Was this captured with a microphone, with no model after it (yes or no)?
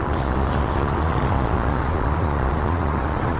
no